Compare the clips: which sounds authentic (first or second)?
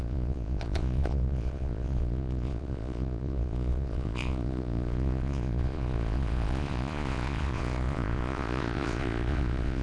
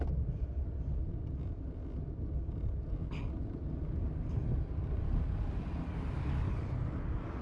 second